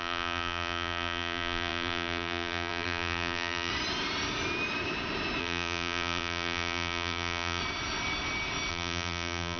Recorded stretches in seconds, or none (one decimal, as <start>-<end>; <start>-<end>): 3.7-5.4; 7.6-8.7